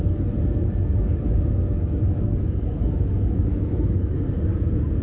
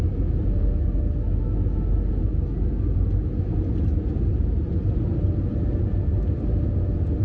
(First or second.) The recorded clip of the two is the second